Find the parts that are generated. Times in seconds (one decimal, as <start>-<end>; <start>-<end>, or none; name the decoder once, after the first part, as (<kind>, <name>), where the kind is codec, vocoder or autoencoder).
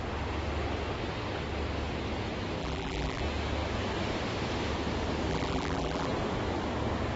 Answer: 2.6-3.2 (vocoder, BigVGAN v2); 5.3-6.1